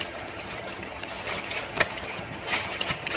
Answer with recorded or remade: remade